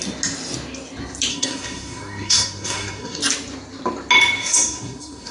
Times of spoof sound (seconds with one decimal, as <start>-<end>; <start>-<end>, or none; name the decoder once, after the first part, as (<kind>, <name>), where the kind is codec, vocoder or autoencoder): 1.3-3.2 (codec, SNAC); 4.4-5.3